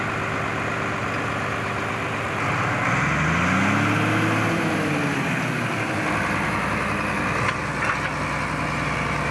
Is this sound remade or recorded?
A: recorded